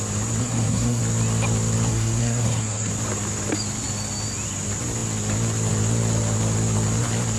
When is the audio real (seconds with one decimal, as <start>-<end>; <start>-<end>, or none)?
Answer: 0.0-0.4; 1.0-1.9; 2.9-7.4